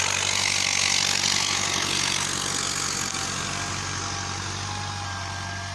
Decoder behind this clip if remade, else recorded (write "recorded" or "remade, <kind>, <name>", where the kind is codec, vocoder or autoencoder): recorded